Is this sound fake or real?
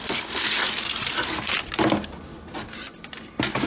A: real